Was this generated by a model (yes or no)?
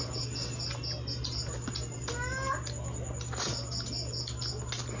no